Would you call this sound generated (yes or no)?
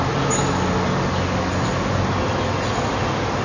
no